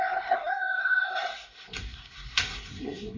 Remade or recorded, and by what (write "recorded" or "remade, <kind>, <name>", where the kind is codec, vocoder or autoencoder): remade, codec, SNAC